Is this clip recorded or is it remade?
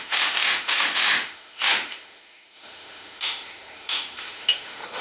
remade